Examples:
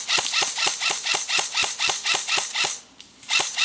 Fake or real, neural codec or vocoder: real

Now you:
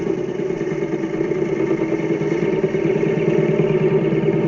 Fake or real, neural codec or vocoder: real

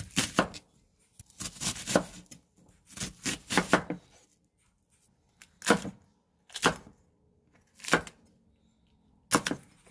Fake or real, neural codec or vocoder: real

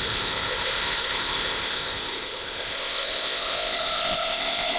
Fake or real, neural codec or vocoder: fake, codec, ZipCodec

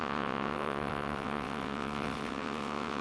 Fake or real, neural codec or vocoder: fake, vocoder, WaveNeXt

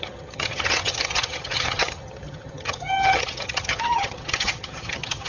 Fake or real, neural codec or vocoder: fake, vocoder, HiFi-GAN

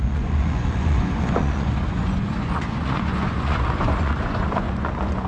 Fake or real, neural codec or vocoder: fake, vocoder, Vocos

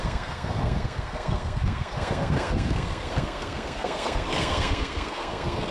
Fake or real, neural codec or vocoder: fake, codec, SNAC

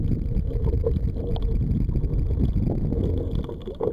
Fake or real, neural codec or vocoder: real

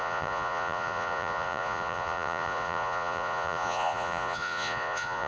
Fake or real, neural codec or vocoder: fake, vocoder, Vocos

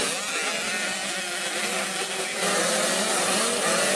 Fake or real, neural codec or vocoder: real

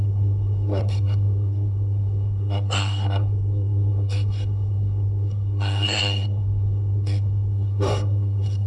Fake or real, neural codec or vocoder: fake, codec, SNAC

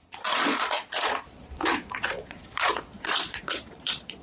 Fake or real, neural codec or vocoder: fake, vocoder, Vocos